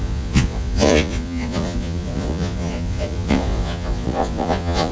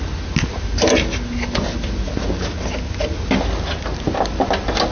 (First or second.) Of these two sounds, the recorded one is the second